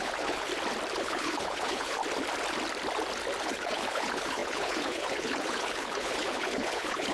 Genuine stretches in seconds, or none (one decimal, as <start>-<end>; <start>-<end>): 0.5-1.0; 2.0-3.4

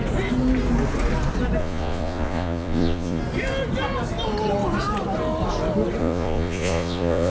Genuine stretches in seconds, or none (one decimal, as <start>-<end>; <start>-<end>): 0.0-1.6; 3.2-6.0

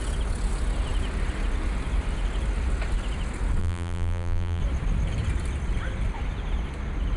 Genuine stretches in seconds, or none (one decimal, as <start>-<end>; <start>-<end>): 0.0-3.6; 4.6-7.2

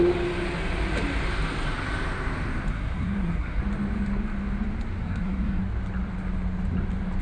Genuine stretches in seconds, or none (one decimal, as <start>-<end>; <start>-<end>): 0.0-2.7; 3.6-5.0; 5.6-7.2

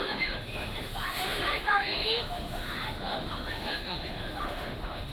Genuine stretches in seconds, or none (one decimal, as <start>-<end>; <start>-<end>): none

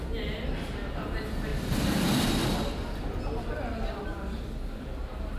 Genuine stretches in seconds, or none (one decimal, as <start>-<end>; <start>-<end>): 0.0-1.5; 4.7-5.4

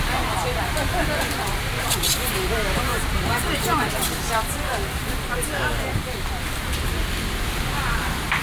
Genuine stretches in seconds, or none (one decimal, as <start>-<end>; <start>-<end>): 0.0-2.9; 3.8-4.7; 5.5-8.4

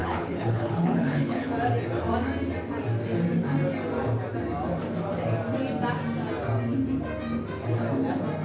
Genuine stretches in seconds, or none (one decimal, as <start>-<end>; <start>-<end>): 1.5-8.4